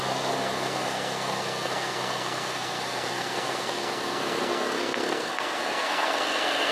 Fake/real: fake